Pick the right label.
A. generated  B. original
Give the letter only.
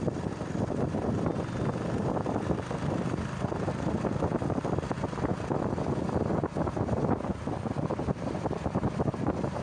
B